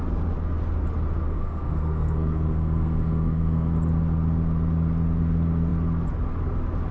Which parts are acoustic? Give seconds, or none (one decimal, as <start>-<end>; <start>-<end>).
0.0-1.3; 3.7-6.9